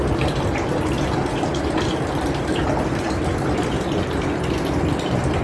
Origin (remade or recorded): recorded